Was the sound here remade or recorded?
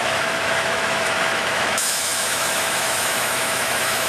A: remade